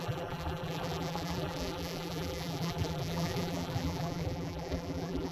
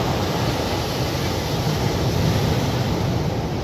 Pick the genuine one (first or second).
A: second